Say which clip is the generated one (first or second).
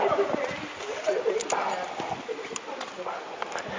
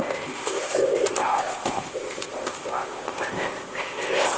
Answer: second